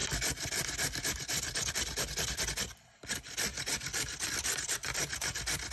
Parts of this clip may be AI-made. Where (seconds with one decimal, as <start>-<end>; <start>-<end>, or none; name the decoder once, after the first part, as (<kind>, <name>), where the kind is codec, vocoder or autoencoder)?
none